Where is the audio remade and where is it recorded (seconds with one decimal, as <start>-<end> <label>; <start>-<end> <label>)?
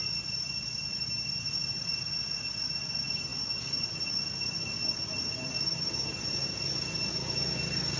0.0-8.0 recorded